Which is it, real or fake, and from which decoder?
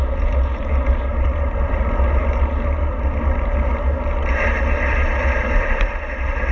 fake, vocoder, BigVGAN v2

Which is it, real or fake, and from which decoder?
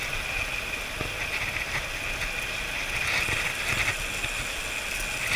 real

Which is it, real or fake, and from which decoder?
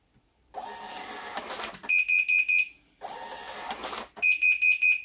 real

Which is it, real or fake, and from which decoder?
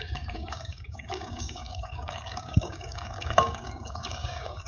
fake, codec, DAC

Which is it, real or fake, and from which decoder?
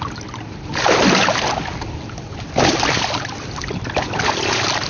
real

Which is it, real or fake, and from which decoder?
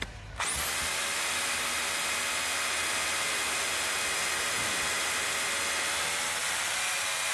real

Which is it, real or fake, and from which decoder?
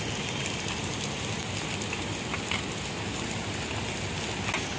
real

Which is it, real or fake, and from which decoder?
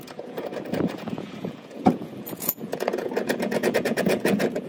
fake, vocoder, Vocos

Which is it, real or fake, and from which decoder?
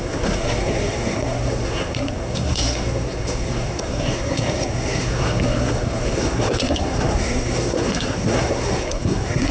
fake, codec, SNAC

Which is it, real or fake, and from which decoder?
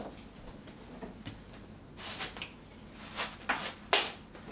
real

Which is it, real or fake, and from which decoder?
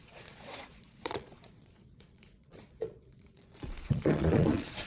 fake, vocoder, Vocos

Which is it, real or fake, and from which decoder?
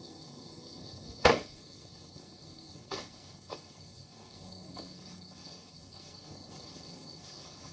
fake, codec, SNAC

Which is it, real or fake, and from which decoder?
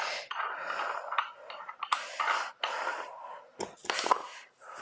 real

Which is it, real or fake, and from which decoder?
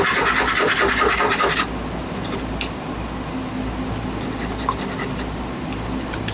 real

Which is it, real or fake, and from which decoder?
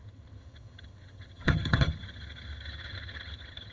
fake, vocoder, HiFi-GAN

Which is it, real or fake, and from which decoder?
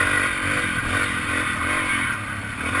real